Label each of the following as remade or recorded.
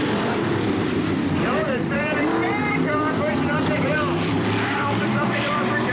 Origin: remade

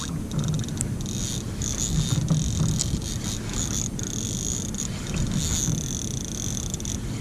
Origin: recorded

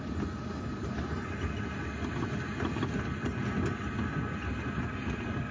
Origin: recorded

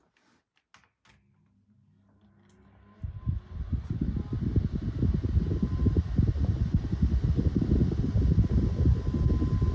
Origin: recorded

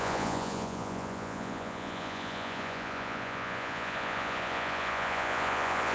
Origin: remade